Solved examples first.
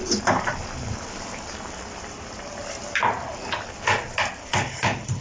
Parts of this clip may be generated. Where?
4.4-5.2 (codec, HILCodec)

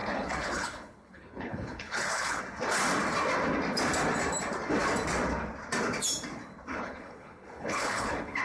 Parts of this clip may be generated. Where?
0.0-2.4 (codec, HILCodec); 6.7-8.4

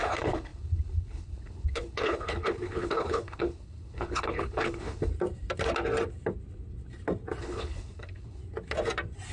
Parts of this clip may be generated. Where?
0.0-5.1 (codec, HILCodec); 7.4-8.4

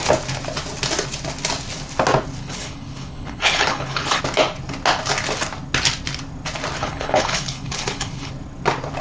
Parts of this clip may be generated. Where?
2.4-4.2 (codec, HILCodec); 6.8-8.3